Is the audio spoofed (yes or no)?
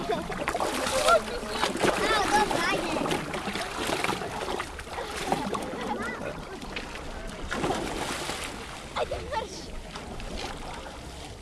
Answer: no